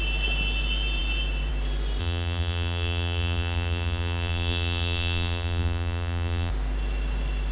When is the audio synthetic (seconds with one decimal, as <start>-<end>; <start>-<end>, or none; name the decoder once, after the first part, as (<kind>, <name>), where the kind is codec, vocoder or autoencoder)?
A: 2.0-6.5 (vocoder, BigVGAN v2)